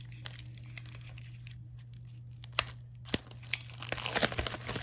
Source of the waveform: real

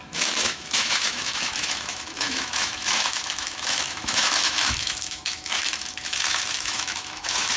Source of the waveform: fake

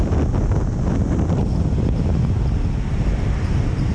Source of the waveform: real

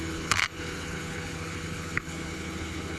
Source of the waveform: fake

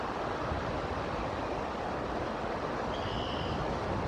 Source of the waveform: real